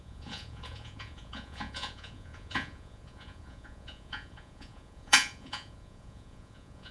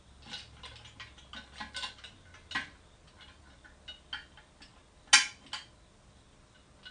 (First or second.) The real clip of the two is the second